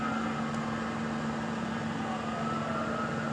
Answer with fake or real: real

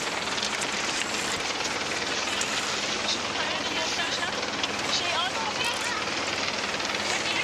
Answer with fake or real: real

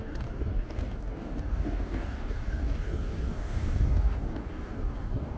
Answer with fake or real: fake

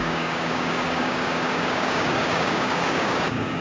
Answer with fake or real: fake